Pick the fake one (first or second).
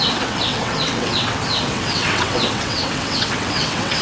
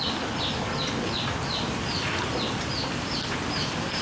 first